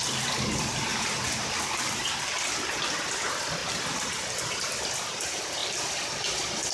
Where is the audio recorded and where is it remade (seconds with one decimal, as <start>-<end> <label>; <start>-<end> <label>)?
0.0-0.9 recorded; 0.9-2.2 remade; 2.2-3.6 recorded; 3.6-4.4 remade; 4.4-6.7 recorded